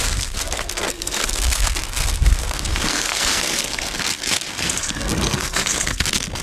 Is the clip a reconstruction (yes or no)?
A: yes